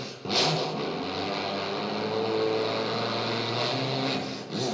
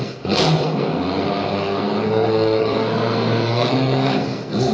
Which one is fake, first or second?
second